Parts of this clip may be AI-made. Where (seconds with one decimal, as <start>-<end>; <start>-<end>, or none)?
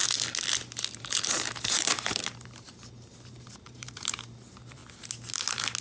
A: 1.0-4.8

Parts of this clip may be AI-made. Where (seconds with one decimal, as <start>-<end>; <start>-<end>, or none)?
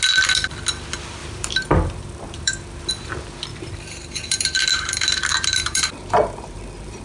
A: 1.2-2.9; 3.5-7.0